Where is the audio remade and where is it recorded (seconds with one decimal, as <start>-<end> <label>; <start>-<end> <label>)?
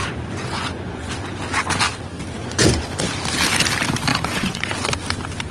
0.0-1.1 remade; 1.1-2.4 recorded; 2.4-3.0 remade; 3.0-4.1 recorded; 4.1-4.9 remade; 4.9-5.5 recorded